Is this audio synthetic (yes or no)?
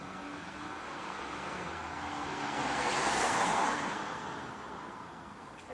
yes